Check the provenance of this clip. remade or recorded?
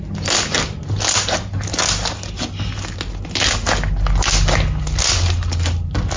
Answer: recorded